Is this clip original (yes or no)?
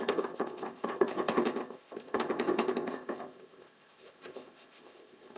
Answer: no